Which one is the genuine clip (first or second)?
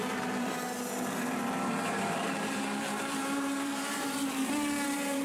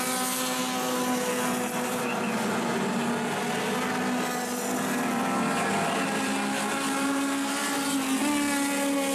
second